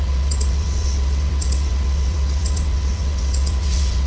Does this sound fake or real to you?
fake